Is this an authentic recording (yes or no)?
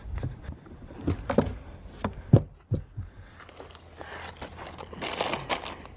yes